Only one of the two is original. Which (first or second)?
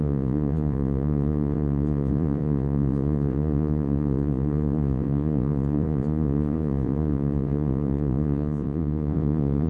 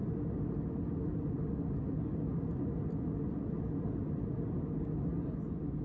second